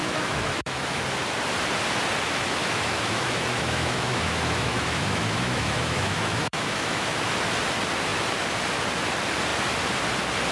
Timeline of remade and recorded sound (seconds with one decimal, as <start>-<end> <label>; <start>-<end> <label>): 0.0-1.0 remade; 1.0-2.6 recorded; 2.6-7.3 remade; 7.3-10.5 recorded